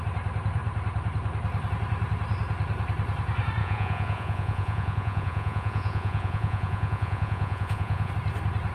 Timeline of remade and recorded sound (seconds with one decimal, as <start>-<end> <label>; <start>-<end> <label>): 0.0-3.6 recorded; 3.6-8.1 remade; 8.1-8.7 recorded